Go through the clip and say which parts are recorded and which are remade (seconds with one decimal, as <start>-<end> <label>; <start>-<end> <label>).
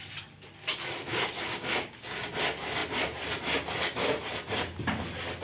0.0-1.1 recorded; 1.1-2.3 remade; 2.3-5.4 recorded